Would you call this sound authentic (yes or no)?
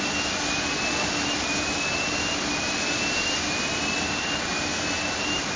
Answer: yes